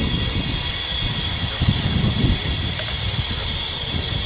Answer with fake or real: real